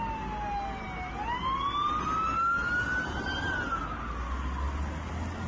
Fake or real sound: real